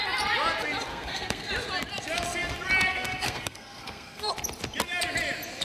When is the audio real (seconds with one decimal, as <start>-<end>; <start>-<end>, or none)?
0.0-0.9; 1.5-2.9; 4.3-5.6